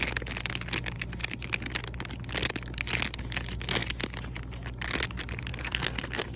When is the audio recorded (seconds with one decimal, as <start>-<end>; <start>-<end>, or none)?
0.0-5.5